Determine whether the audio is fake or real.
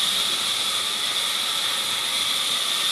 real